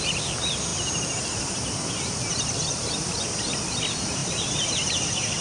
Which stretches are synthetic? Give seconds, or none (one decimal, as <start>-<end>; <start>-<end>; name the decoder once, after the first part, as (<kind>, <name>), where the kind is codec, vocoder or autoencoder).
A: 0.0-3.3 (vocoder, BigVGAN v2); 3.8-5.4